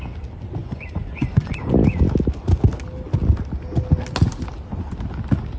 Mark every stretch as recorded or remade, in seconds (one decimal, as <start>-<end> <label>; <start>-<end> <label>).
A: 0.0-0.6 recorded; 0.6-1.7 remade; 1.7-5.6 recorded